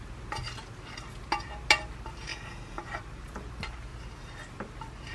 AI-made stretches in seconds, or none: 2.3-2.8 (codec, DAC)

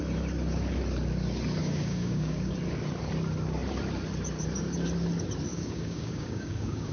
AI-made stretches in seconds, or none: 1.6-2.5 (codec, DAC); 5.5-6.9

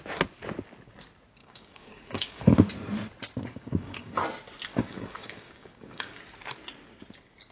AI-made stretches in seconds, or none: 1.4-2.7 (codec, DAC); 3.5-4.2; 4.7-6.2

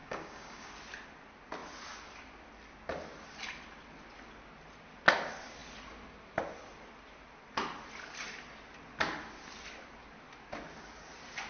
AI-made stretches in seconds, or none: 0.0-0.7 (codec, DAC)

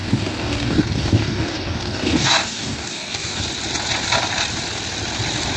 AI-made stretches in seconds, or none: 0.0-3.4 (codec, DAC)

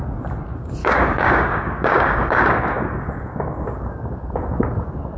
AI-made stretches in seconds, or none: 0.8-3.9 (codec, DAC)